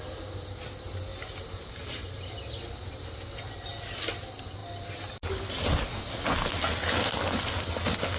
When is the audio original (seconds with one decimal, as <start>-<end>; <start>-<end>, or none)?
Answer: 0.0-1.1; 2.2-8.2